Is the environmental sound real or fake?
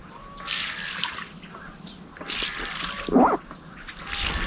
real